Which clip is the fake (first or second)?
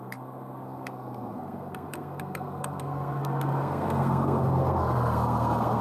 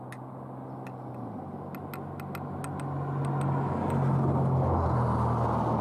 first